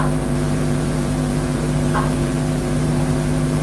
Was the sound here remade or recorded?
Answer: remade